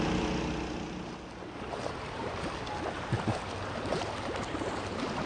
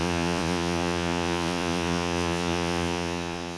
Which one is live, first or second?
first